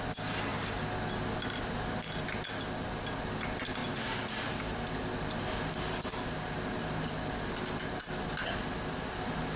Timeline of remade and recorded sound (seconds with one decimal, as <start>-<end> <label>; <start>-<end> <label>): 0.0-9.6 recorded